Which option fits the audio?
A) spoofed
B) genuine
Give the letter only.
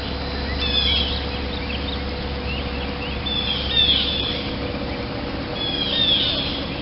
B